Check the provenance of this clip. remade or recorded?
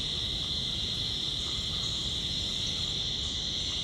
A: recorded